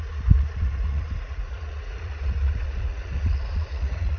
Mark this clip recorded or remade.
remade